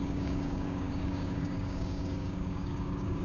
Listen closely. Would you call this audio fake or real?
fake